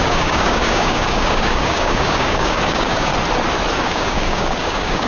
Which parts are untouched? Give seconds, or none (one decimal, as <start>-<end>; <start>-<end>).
3.1-3.8